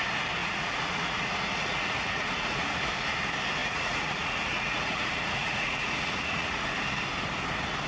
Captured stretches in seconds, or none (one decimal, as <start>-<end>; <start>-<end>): 0.0-0.4; 2.8-3.6; 6.7-7.9